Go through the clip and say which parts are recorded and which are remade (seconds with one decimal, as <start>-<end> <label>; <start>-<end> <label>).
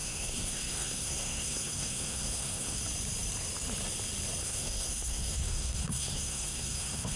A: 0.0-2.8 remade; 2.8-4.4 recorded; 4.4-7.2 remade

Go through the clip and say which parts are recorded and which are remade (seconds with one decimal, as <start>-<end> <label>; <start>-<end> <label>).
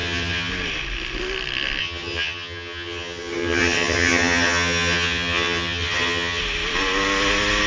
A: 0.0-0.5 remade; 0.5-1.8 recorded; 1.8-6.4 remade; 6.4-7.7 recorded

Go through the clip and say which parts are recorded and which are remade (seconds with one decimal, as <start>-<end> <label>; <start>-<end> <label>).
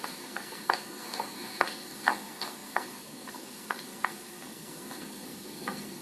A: 0.0-6.0 remade